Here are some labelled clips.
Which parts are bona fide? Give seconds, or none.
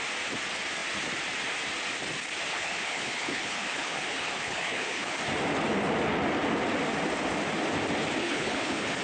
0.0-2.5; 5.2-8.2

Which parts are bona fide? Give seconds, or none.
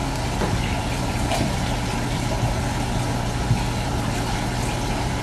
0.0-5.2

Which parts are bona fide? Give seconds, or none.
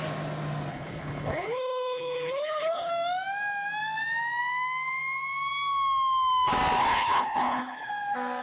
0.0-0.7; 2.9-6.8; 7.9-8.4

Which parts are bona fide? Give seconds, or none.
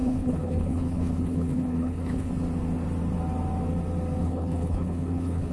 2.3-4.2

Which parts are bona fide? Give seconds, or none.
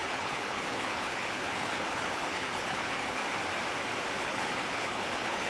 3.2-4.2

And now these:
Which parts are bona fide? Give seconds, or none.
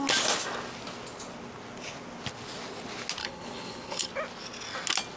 0.0-3.2; 4.1-5.2